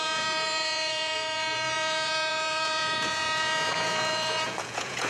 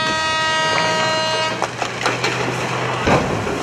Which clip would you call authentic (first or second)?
second